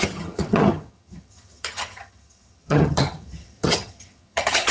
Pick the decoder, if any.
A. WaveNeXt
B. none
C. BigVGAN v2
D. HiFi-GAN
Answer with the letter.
D